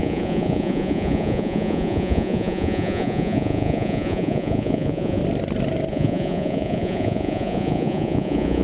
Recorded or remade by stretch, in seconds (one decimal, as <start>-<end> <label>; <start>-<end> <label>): 0.0-5.2 remade; 5.2-5.9 recorded; 5.9-8.6 remade

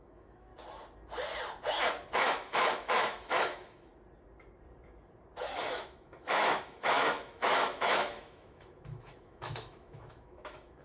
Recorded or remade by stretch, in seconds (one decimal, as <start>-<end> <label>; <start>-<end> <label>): 0.0-0.5 remade; 0.5-2.2 recorded; 2.2-3.9 remade; 3.9-5.6 recorded; 5.6-10.8 remade

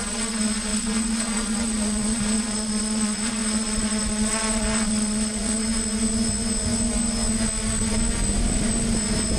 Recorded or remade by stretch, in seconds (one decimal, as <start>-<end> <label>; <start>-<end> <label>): 0.0-5.7 remade; 5.7-9.4 recorded

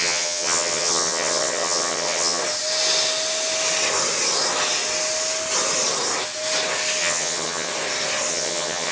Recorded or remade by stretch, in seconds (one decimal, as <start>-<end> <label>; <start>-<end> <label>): 0.0-2.4 remade; 2.4-7.0 recorded; 7.0-7.7 remade; 7.7-8.3 recorded; 8.3-8.9 remade

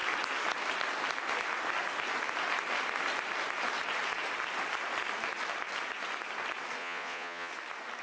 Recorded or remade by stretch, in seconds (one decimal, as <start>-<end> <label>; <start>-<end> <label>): 0.0-6.8 recorded; 6.8-7.5 remade; 7.5-8.0 recorded

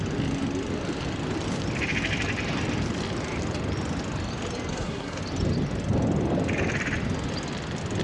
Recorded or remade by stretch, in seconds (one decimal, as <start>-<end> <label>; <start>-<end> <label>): 0.0-4.7 recorded; 4.7-5.2 remade; 5.2-8.0 recorded